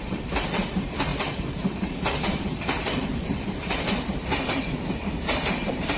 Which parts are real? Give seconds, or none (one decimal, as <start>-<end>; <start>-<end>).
none